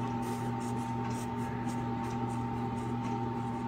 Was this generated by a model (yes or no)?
no